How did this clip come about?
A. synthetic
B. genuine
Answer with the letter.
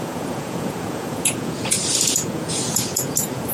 A